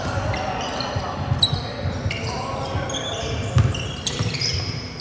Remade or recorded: recorded